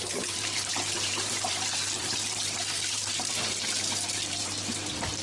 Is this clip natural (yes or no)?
no